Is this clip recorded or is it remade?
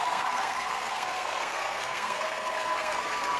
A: remade